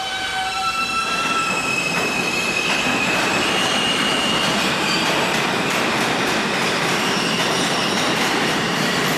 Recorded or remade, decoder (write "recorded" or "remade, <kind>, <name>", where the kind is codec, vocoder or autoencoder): remade, vocoder, BigVGAN v2